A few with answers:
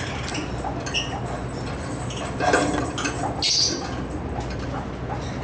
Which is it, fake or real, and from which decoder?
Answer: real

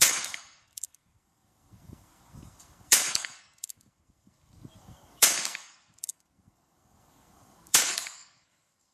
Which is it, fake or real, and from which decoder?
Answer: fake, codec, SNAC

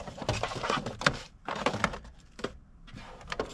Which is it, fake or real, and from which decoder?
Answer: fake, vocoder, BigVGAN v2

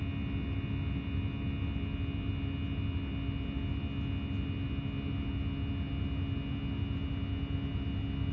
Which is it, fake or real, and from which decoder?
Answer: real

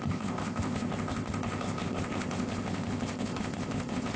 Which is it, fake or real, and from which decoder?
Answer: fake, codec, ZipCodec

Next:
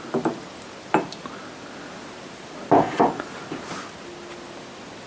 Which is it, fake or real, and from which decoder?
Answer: real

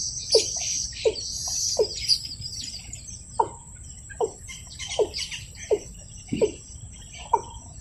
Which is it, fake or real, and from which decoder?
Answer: fake, vocoder, BigVGAN v2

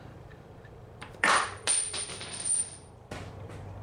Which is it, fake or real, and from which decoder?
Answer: fake, vocoder, BigVGAN v2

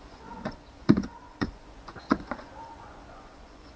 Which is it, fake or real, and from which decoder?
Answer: fake, vocoder, Vocos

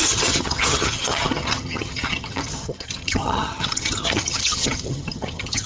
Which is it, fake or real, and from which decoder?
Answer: fake, vocoder, HiFi-GAN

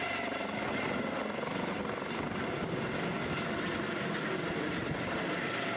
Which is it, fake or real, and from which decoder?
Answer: real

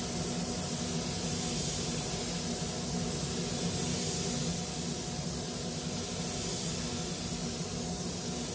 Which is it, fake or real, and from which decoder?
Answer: real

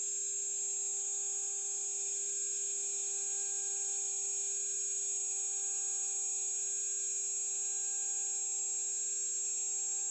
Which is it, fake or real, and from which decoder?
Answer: real